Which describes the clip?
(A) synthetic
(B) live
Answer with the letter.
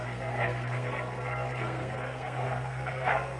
A